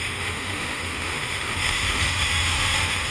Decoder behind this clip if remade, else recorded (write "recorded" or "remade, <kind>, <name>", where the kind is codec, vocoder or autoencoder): remade, autoencoder, DAC-VAE